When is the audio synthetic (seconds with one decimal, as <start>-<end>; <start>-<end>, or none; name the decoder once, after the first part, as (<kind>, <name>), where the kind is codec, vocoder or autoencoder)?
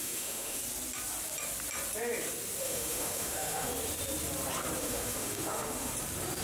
0.0-0.6 (autoencoder, DAC-VAE); 2.6-3.7; 4.8-5.9